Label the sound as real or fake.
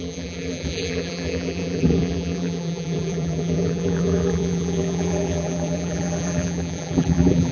fake